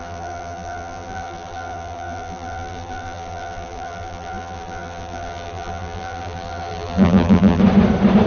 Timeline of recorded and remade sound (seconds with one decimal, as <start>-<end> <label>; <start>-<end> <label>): 0.0-7.6 remade; 7.6-8.3 recorded

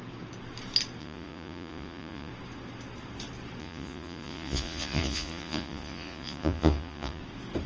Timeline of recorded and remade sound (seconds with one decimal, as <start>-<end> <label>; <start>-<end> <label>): 0.0-1.0 recorded; 1.0-2.3 remade; 2.3-3.6 recorded; 3.6-7.2 remade; 7.2-7.7 recorded

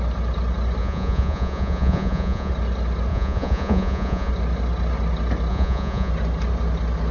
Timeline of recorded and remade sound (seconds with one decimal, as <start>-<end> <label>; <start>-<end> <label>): 0.0-0.8 recorded; 0.8-2.5 remade; 2.5-3.1 recorded; 3.1-4.3 remade; 4.3-5.5 recorded; 5.5-6.1 remade; 6.1-7.1 recorded

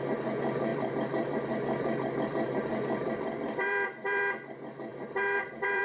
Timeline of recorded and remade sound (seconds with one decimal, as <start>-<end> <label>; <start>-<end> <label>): 0.0-0.7 recorded; 0.7-4.2 remade; 4.2-4.9 recorded; 4.9-5.8 remade

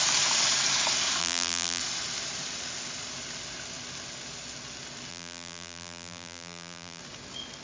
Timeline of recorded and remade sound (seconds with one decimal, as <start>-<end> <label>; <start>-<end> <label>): 0.0-1.2 recorded; 1.2-1.8 remade; 1.8-5.1 recorded; 5.1-7.0 remade; 7.0-7.6 recorded

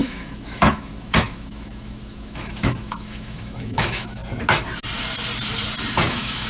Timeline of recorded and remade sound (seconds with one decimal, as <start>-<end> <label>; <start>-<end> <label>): 0.0-4.2 remade; 4.2-6.1 recorded; 6.1-6.5 remade

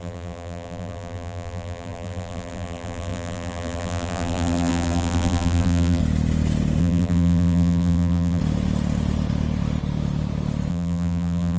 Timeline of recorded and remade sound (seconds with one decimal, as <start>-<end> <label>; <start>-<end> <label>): 0.0-6.0 remade; 6.0-6.8 recorded; 6.8-8.4 remade; 8.4-10.7 recorded; 10.7-11.6 remade